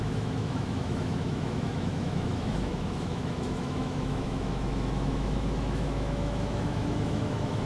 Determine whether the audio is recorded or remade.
remade